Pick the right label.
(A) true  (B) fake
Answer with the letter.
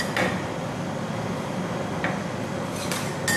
A